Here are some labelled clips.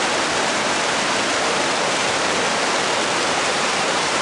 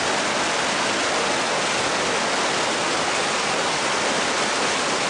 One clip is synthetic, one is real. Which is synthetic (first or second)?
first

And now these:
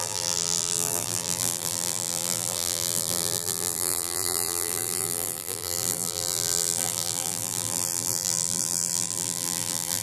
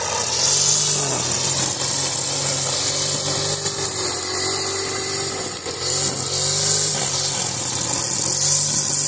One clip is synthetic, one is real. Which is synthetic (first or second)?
first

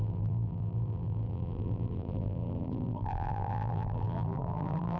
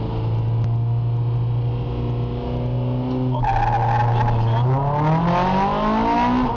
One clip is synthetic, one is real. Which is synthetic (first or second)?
first